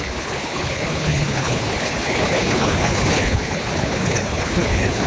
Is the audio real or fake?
fake